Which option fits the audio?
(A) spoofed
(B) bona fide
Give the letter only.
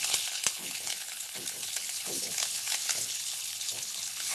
A